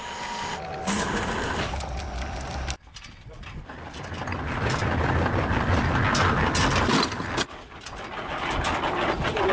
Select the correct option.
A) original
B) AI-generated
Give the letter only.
A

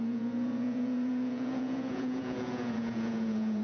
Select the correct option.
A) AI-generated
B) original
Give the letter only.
A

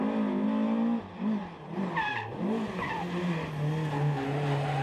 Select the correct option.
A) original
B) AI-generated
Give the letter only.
A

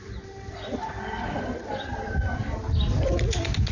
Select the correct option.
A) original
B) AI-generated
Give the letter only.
A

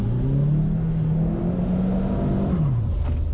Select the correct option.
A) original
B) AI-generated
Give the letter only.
A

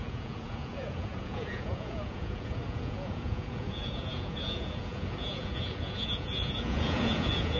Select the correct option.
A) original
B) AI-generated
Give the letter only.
B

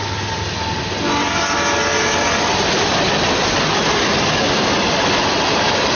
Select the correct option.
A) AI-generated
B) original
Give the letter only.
B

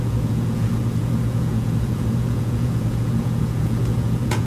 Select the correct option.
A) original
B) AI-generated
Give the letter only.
B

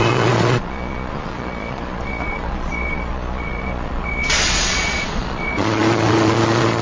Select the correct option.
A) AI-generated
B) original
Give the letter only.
A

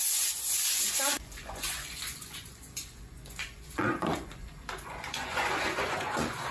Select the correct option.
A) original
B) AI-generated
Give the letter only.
B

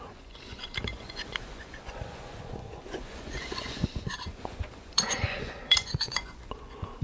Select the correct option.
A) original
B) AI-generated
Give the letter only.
B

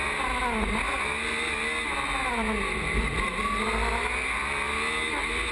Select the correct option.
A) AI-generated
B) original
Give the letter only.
B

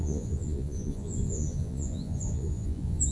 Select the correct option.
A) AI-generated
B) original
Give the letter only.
A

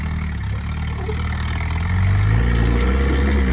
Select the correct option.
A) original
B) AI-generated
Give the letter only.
A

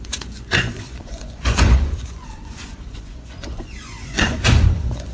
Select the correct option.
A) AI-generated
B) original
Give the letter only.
A